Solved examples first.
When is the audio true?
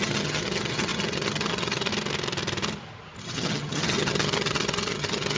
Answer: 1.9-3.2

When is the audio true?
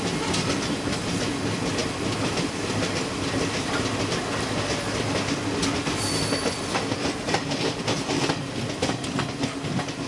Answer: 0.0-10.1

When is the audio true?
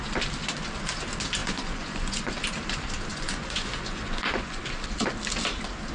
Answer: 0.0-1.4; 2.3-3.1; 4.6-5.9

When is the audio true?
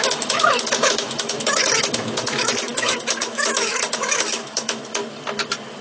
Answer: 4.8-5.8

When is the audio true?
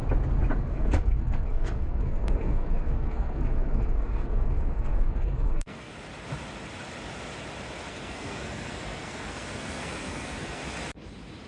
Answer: 0.0-0.6; 5.9-7.9; 10.6-11.5